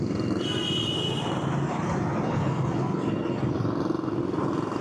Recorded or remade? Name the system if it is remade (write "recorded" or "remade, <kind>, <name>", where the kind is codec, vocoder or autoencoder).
recorded